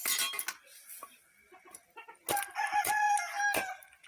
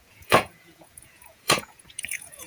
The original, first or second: first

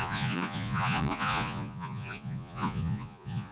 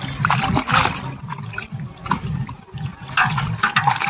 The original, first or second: second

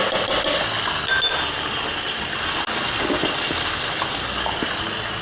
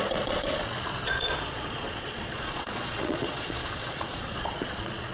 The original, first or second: first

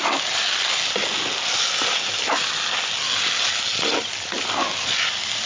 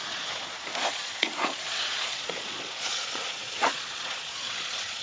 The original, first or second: first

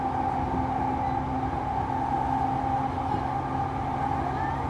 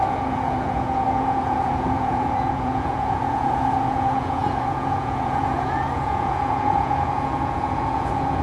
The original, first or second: first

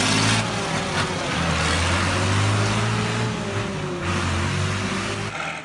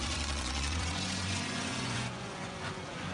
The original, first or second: first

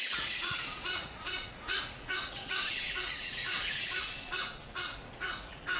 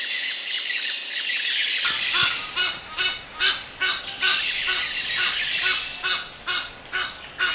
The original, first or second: second